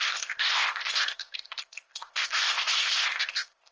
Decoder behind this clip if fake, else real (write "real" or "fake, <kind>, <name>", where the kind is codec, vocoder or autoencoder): fake, codec, ZipCodec